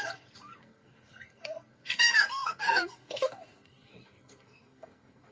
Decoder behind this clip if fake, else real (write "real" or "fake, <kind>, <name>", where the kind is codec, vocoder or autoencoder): fake, codec, SNAC